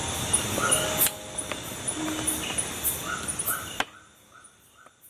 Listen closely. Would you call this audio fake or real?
real